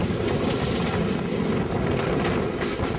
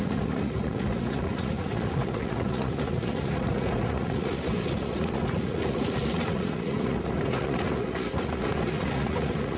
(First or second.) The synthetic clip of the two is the second